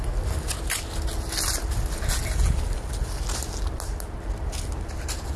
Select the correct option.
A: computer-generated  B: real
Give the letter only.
B